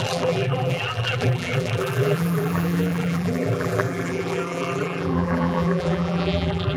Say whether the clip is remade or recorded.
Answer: remade